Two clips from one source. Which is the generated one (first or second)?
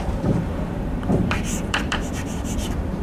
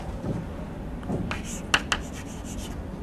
first